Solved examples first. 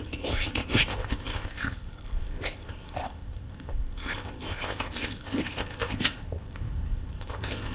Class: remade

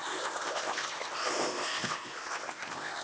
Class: remade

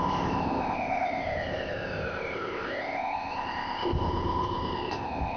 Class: remade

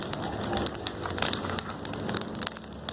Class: recorded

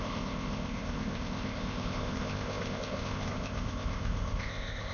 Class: remade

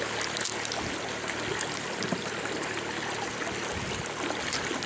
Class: recorded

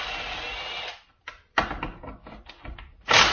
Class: recorded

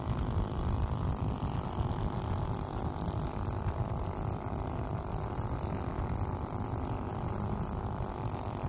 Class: recorded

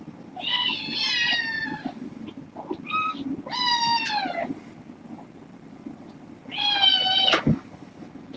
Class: recorded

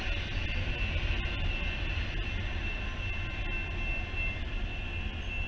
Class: recorded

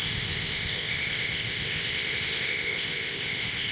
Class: remade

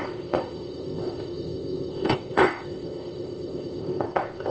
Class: remade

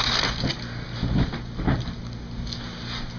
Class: recorded